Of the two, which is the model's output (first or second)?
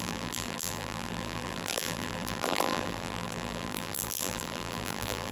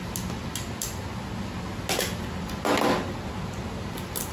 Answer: first